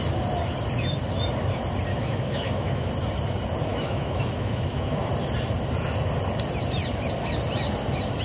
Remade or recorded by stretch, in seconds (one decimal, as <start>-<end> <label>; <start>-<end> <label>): 0.0-1.9 recorded; 1.9-2.9 remade; 2.9-3.7 recorded; 3.7-5.1 remade; 5.1-8.2 recorded